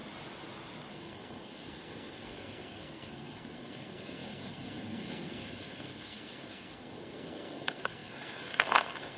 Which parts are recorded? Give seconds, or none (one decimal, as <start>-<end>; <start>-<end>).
0.0-0.9